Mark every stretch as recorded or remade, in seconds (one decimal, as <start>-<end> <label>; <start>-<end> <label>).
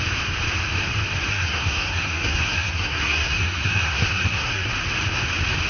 0.0-1.3 recorded; 1.3-4.7 remade; 4.7-5.7 recorded